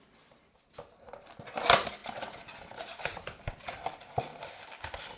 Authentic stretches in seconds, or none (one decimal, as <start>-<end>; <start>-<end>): 0.0-5.2